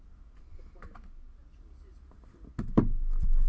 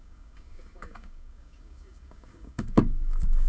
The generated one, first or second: second